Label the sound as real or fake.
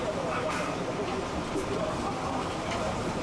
real